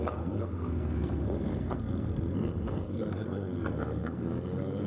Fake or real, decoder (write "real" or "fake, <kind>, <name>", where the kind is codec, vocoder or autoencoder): fake, codec, SNAC